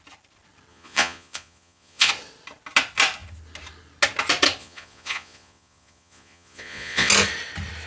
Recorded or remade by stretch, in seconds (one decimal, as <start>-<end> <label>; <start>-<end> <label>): 0.0-0.7 recorded; 0.7-2.1 remade; 2.1-4.6 recorded; 4.6-7.1 remade; 7.1-7.9 recorded